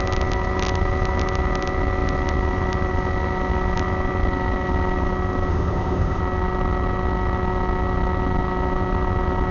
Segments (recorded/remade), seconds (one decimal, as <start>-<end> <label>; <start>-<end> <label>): 0.0-5.5 recorded; 5.5-6.2 remade; 6.2-9.5 recorded